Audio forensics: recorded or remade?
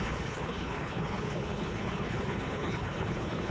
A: remade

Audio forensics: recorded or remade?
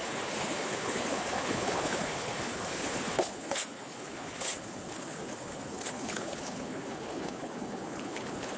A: remade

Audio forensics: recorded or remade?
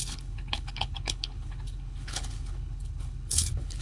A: remade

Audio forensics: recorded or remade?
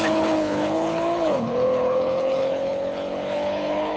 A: remade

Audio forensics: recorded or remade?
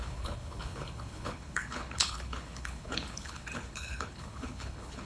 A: remade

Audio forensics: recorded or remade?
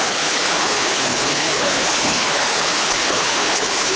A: remade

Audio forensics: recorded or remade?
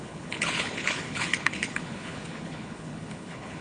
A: remade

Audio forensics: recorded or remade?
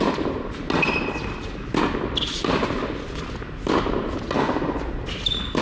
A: recorded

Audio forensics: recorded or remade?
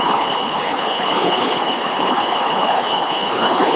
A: remade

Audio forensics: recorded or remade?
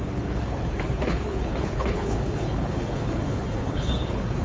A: remade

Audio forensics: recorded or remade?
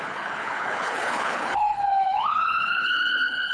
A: remade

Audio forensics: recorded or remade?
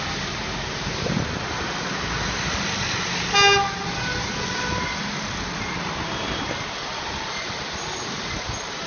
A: recorded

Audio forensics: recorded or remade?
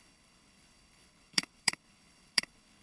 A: remade